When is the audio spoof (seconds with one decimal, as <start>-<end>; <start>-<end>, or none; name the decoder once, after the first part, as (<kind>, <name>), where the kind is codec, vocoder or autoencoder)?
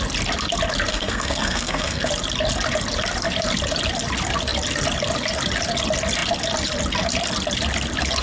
0.9-2.1 (codec, SNAC)